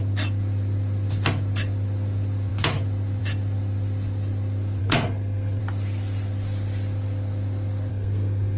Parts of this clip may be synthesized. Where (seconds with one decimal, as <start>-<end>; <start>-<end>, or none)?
4.8-5.6; 7.9-8.6

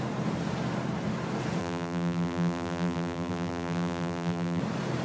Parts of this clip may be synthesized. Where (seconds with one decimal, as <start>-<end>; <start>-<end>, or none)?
1.6-4.6